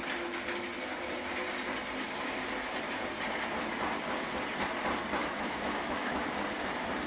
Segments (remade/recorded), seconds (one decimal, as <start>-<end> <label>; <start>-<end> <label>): 0.0-5.2 recorded; 5.2-6.2 remade; 6.2-7.1 recorded